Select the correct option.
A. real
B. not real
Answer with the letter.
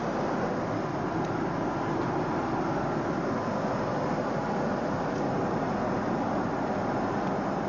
A